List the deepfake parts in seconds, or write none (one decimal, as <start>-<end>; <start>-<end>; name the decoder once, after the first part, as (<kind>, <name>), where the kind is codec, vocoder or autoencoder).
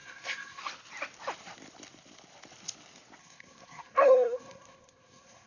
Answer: 0.0-0.6 (codec, SNAC); 3.2-5.5